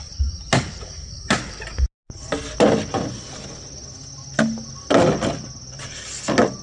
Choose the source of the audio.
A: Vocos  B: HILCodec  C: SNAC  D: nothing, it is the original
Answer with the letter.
D